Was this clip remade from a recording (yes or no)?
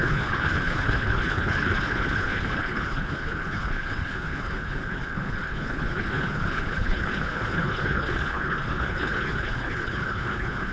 yes